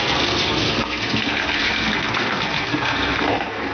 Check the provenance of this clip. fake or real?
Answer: fake